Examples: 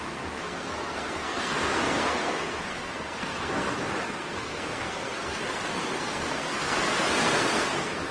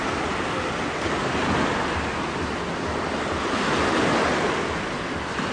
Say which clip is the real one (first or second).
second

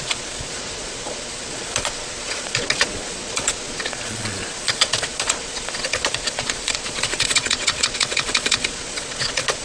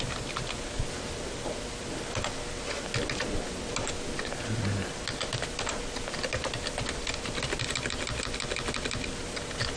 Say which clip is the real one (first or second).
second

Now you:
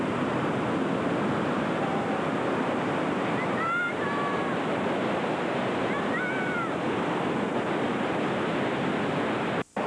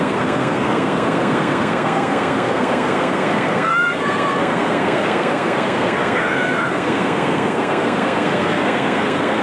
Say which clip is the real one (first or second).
first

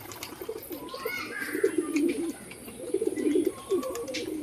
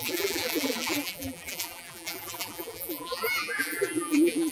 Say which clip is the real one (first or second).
first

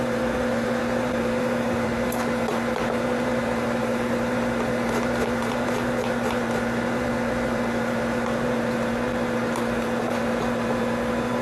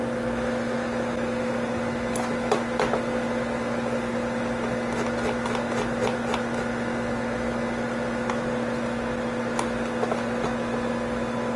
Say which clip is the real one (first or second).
second